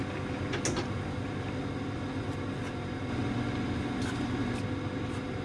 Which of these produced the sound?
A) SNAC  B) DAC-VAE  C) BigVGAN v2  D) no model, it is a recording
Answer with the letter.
D